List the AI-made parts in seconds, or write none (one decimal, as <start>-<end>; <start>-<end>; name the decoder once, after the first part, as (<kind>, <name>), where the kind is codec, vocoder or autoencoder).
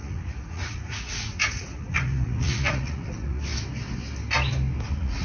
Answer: 0.0-3.5 (vocoder, Vocos); 4.8-5.2